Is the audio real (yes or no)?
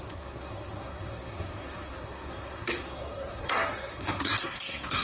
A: no